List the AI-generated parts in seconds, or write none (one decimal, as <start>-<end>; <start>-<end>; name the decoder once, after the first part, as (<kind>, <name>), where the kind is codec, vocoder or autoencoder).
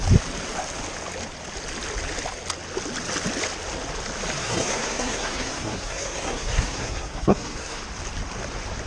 4.4-7.8 (codec, SNAC)